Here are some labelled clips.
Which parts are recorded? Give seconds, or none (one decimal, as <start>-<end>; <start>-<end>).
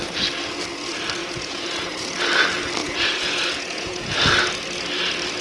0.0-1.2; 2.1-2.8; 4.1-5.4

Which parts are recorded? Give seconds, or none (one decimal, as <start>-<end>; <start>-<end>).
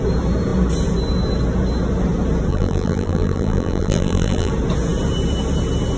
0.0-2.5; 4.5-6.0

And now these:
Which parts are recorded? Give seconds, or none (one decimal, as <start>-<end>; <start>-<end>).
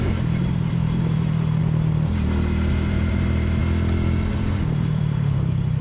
1.6-2.7; 3.6-4.3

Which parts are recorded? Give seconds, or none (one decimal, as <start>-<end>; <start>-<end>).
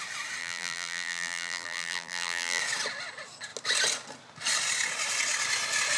0.0-0.4; 2.6-6.0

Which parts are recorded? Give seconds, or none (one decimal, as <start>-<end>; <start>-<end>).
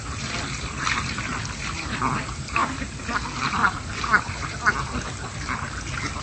1.3-2.2; 2.6-3.5